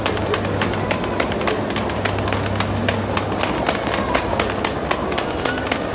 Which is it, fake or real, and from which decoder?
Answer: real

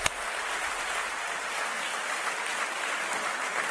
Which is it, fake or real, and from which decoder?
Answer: fake, vocoder, BigVGAN v2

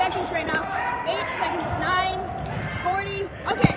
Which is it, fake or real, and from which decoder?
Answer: fake, vocoder, BigVGAN v2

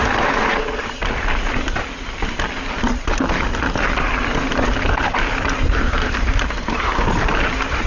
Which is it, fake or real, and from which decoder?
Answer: real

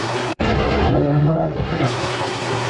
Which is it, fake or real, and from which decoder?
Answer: fake, codec, SNAC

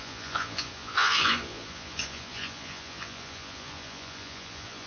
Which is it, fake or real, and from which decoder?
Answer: fake, vocoder, Vocos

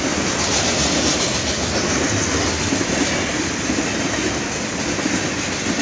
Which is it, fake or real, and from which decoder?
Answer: real